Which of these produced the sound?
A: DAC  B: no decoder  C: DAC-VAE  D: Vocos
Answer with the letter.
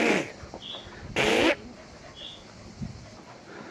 B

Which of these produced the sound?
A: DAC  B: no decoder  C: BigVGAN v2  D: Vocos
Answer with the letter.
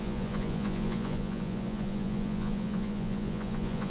D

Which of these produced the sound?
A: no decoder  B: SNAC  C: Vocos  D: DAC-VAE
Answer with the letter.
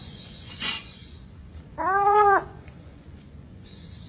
C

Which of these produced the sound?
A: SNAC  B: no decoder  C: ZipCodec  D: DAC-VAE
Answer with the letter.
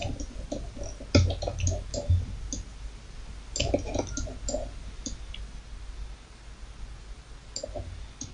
B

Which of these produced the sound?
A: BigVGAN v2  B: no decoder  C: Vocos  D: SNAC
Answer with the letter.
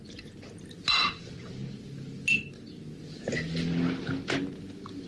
B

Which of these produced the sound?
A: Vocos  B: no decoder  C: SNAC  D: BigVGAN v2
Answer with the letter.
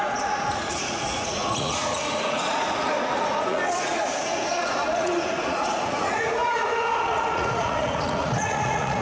A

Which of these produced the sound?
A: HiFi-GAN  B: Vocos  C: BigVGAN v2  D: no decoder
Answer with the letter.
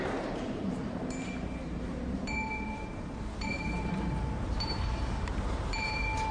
C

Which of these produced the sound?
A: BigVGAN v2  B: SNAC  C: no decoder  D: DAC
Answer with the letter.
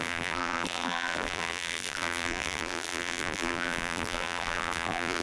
A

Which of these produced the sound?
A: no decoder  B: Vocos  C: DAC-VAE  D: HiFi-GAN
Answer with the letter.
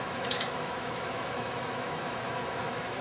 C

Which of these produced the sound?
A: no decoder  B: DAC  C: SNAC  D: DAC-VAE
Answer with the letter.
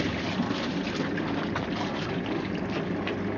A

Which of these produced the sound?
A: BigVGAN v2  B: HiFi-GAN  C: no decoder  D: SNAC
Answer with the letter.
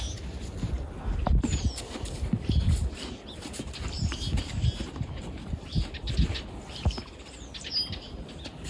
C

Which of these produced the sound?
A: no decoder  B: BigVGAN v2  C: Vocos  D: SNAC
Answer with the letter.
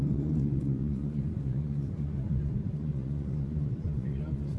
C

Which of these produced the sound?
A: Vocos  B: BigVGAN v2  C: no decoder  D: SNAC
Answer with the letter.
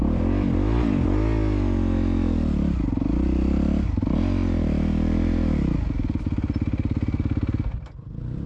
C